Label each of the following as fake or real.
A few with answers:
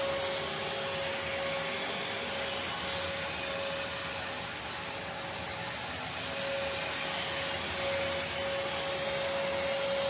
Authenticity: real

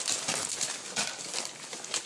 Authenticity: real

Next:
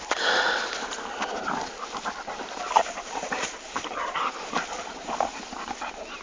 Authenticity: real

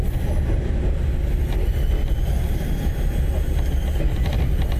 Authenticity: real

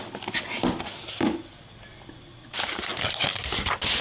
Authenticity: real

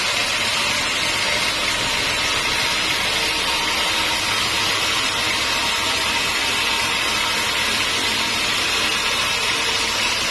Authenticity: real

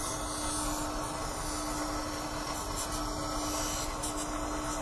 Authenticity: real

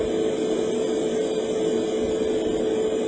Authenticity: real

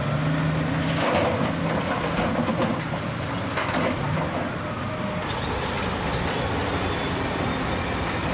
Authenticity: real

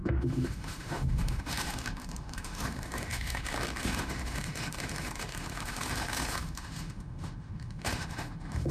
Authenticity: fake